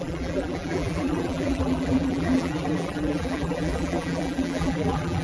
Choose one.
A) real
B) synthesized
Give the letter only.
B